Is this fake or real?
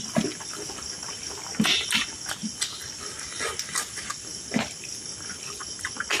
real